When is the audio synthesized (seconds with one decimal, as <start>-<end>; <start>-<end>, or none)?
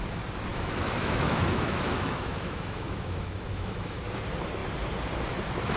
0.5-4.0